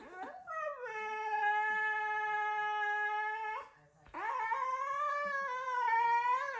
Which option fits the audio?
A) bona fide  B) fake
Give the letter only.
A